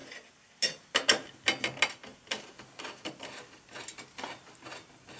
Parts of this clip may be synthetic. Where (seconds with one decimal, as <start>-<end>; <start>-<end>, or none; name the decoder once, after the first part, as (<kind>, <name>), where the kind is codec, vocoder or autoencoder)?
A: none